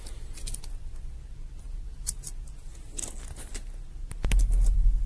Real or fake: real